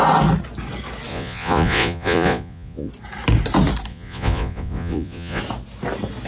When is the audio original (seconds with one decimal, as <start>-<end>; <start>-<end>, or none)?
0.0-1.1; 2.9-3.9; 5.4-6.3